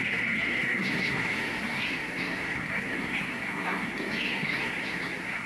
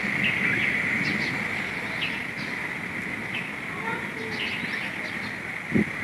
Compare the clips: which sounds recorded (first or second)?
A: second